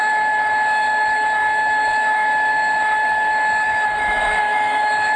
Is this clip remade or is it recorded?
remade